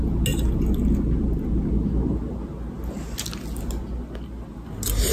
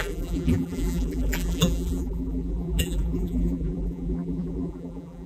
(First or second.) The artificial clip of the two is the second